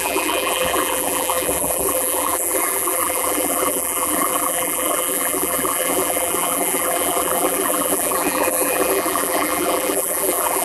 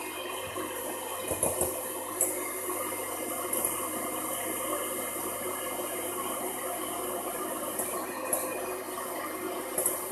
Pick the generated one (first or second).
first